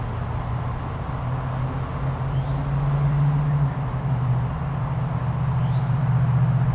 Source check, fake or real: real